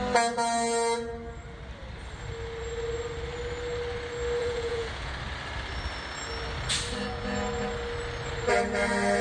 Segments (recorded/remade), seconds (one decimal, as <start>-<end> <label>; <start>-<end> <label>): 0.0-4.4 recorded; 4.4-5.1 remade; 5.1-9.2 recorded